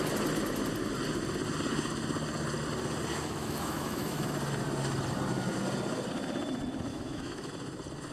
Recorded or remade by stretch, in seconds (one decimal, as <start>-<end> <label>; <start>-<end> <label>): 0.0-3.1 recorded; 3.1-4.3 remade; 4.3-6.9 recorded; 6.9-7.5 remade; 7.5-8.1 recorded